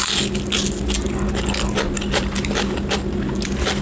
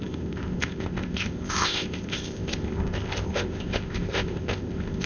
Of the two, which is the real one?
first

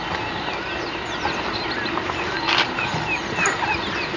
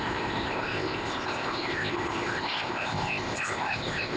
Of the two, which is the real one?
first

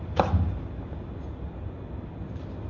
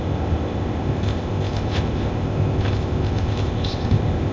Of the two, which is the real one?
first